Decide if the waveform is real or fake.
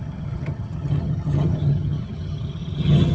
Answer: fake